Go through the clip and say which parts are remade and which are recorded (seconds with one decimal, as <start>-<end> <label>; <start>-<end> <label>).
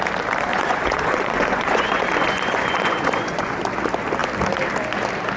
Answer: 0.0-0.5 recorded; 0.5-3.5 remade; 3.5-5.4 recorded